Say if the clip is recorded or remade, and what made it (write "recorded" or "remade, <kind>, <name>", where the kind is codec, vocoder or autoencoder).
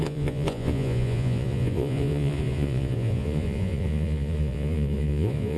remade, vocoder, Vocos